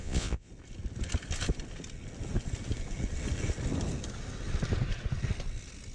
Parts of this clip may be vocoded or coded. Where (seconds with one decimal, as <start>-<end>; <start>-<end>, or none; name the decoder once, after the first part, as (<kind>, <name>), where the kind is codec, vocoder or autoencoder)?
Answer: 0.0-0.5 (vocoder, Vocos)

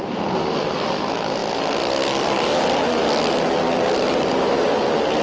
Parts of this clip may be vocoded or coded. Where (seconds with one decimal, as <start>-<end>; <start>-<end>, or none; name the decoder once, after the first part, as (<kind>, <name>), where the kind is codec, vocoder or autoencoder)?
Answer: 4.3-4.8 (vocoder, BigVGAN v2)

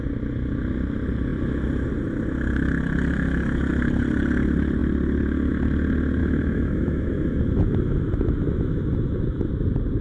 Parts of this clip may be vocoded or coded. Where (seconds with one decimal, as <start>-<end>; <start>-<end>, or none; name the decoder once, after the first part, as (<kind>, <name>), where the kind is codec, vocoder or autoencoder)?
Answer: 6.2-9.5 (autoencoder, DAC-VAE)

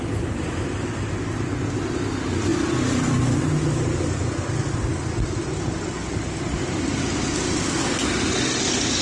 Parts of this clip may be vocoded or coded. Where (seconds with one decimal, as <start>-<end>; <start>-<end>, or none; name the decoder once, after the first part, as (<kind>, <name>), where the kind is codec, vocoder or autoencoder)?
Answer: none

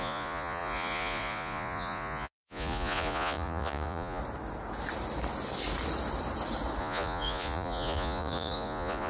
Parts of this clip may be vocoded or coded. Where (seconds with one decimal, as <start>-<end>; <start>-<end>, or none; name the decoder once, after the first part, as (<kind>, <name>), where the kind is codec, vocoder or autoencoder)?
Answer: 0.0-4.2 (vocoder, Vocos); 6.8-9.1